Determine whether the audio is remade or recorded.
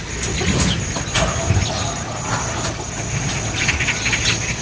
recorded